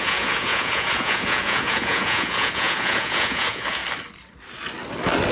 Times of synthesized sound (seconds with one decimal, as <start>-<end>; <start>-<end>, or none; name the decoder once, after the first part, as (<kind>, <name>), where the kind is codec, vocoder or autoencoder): 0.0-3.8 (vocoder, Vocos)